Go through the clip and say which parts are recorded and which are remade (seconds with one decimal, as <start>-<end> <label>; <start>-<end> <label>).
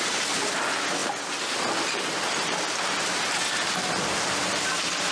0.0-5.1 recorded